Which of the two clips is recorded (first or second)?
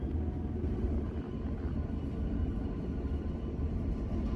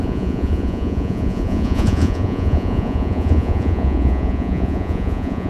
first